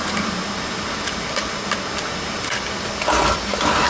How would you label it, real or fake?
real